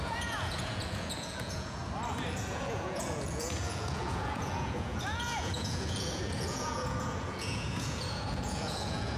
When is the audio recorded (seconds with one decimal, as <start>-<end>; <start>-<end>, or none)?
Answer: 1.8-2.3